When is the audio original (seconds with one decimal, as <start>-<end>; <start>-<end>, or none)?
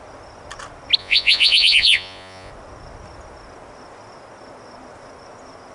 0.0-1.0; 2.5-5.7